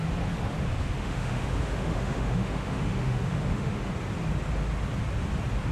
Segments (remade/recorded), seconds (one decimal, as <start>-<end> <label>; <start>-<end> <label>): 0.0-1.0 recorded; 1.0-3.9 remade; 3.9-5.7 recorded